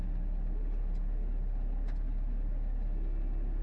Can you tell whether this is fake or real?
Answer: real